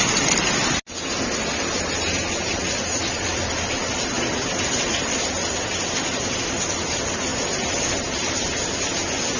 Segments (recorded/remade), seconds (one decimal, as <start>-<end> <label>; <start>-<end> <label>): 0.0-2.6 recorded; 2.6-5.2 remade; 5.2-7.3 recorded; 7.3-8.3 remade; 8.3-9.4 recorded